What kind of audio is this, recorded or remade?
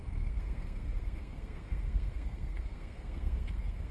remade